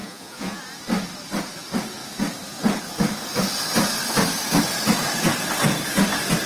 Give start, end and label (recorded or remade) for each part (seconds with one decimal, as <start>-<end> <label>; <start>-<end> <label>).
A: 0.0-0.6 remade; 0.6-6.5 recorded